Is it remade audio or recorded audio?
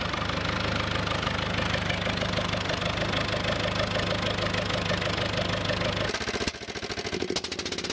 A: recorded